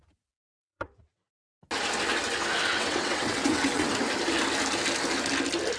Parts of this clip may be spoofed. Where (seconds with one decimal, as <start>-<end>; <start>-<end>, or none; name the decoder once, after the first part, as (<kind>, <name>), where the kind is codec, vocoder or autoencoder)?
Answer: 0.6-1.3 (vocoder, WaveNeXt); 2.7-3.9